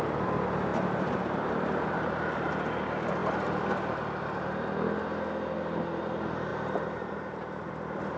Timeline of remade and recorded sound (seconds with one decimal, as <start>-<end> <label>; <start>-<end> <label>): 0.0-0.7 recorded; 0.7-2.5 remade; 2.5-6.5 recorded; 6.5-7.7 remade; 7.7-8.2 recorded